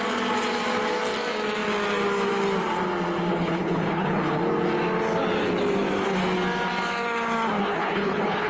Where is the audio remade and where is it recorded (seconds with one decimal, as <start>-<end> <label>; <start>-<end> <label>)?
0.0-3.3 recorded; 3.3-4.4 remade; 4.4-7.6 recorded; 7.6-8.5 remade